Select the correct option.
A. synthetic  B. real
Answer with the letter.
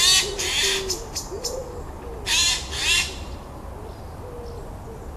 B